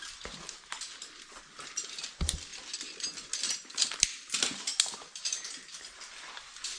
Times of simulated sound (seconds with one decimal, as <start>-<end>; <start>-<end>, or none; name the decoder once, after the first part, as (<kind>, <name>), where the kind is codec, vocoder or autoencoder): none